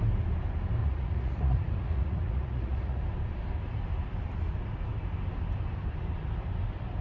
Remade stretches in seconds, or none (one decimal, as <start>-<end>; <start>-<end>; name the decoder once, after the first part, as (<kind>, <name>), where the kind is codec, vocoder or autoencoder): 0.8-3.0 (vocoder, Vocos)